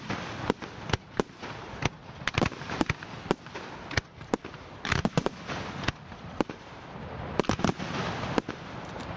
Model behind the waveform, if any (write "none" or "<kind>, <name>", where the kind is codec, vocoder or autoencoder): none